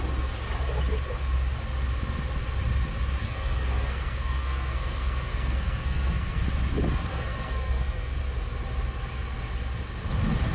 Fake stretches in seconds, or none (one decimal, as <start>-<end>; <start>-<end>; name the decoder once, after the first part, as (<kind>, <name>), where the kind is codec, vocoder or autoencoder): 3.2-6.4 (codec, SNAC); 7.1-8.2